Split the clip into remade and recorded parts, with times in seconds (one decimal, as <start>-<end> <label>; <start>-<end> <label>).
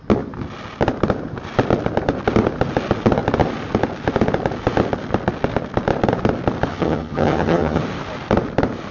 0.0-6.7 recorded; 6.7-7.8 remade; 7.8-8.9 recorded